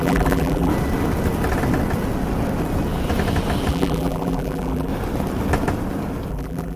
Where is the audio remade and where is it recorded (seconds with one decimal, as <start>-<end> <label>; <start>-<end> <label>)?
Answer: 0.0-0.7 remade; 0.7-3.7 recorded; 3.7-4.9 remade; 4.9-6.3 recorded; 6.3-6.8 remade